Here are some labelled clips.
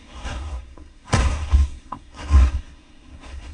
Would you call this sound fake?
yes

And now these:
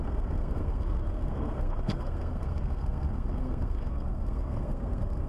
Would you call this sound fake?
yes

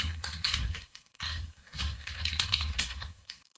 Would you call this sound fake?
yes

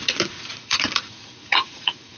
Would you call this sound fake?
yes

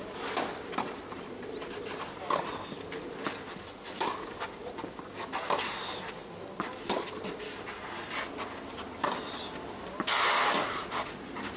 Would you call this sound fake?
no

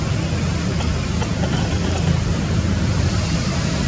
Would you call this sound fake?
no